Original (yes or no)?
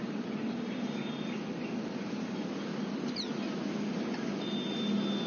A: yes